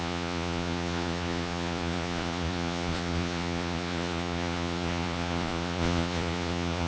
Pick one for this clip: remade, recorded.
remade